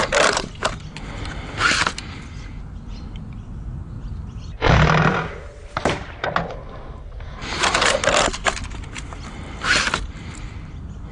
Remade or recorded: recorded